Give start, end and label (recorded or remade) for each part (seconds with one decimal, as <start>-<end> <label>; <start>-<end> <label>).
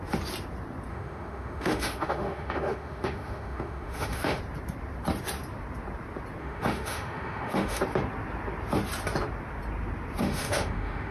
0.0-0.9 recorded; 0.9-4.4 remade; 4.4-6.4 recorded; 6.4-7.8 remade; 7.8-10.2 recorded; 10.2-11.1 remade